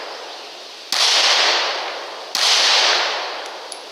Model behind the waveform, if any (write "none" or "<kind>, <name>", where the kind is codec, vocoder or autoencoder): none